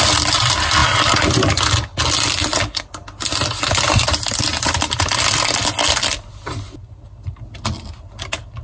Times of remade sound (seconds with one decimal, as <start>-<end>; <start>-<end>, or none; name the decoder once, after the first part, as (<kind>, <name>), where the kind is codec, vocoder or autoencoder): none